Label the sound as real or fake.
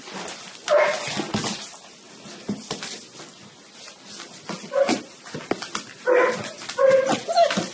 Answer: real